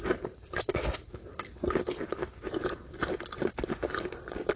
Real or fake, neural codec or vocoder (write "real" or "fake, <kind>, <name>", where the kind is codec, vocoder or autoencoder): real